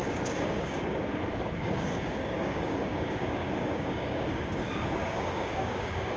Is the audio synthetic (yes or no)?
yes